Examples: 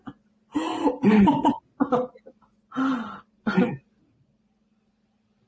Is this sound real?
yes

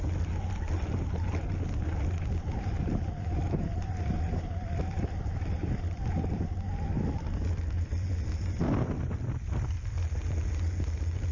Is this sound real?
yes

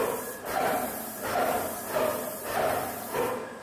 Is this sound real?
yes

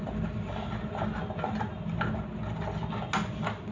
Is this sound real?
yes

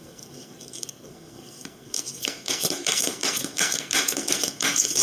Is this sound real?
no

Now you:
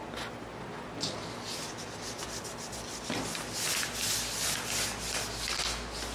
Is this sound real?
yes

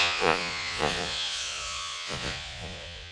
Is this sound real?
no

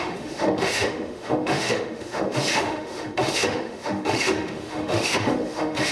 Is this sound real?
no